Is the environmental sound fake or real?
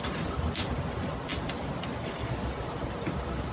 fake